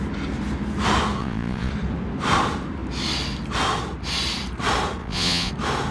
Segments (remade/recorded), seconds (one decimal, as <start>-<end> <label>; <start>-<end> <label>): 0.0-1.2 recorded; 1.2-1.7 remade; 1.7-5.0 recorded; 5.0-5.5 remade; 5.5-5.9 recorded

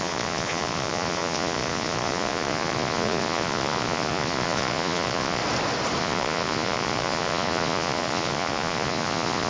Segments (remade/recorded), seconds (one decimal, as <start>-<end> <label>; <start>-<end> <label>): 0.0-5.4 remade; 5.4-6.0 recorded; 6.0-9.5 remade

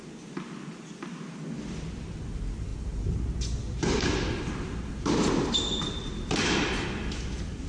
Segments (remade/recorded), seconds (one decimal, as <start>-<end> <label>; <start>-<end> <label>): 0.0-7.7 recorded

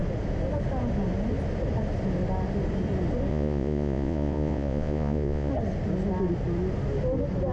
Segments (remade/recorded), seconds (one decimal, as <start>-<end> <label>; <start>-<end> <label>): 0.0-3.3 recorded; 3.3-5.5 remade; 5.5-7.5 recorded

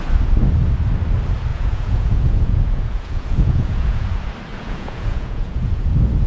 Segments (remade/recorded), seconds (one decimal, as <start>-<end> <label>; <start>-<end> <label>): 0.0-1.5 recorded; 1.5-4.1 remade; 4.1-4.5 recorded; 4.5-6.3 remade